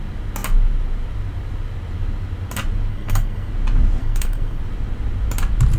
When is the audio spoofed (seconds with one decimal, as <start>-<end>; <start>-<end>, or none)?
2.9-3.5; 4.0-4.6